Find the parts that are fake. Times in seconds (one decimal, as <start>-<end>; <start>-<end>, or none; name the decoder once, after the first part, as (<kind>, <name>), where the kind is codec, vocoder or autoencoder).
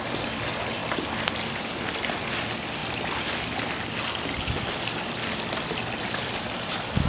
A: none